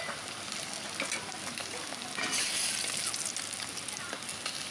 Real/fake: real